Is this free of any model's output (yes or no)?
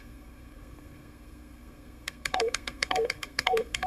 no